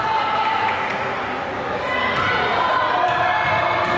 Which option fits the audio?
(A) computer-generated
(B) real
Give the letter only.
B